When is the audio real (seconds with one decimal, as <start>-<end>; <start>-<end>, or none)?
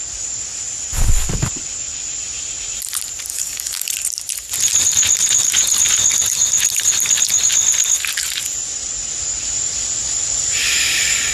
0.0-3.3; 3.9-11.3